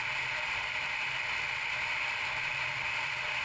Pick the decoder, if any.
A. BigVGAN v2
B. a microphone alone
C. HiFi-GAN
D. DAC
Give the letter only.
B